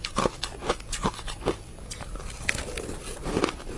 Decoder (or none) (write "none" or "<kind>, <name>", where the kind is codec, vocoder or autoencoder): none